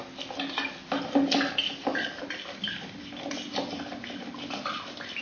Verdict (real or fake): real